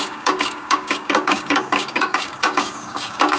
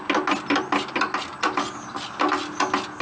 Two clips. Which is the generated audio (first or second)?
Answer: first